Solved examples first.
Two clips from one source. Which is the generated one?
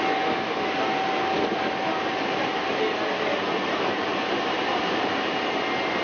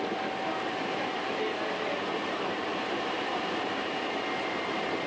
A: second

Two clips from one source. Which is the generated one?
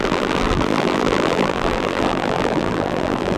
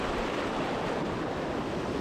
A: first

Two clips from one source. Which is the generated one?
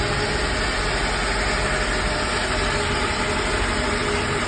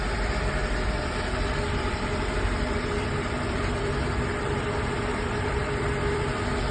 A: second